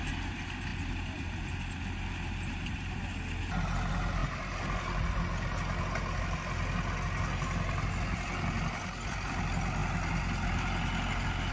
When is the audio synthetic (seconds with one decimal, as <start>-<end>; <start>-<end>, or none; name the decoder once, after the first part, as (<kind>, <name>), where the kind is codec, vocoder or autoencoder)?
0.7-3.0 (vocoder, BigVGAN v2)